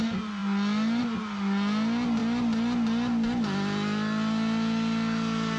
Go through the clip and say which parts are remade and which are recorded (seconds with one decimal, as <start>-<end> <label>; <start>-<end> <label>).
0.0-5.6 recorded